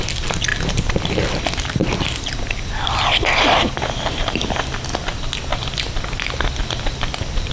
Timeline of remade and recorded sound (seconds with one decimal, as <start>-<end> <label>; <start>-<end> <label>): 0.0-7.5 recorded